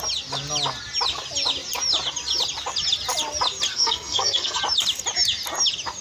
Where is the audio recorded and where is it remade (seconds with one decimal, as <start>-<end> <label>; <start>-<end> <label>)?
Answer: 0.0-3.7 recorded; 3.7-4.6 remade; 4.6-6.0 recorded